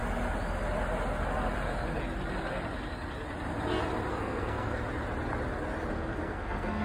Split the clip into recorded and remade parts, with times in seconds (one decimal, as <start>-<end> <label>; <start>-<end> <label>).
0.0-4.1 recorded; 4.1-4.8 remade; 4.8-5.9 recorded; 5.9-6.8 remade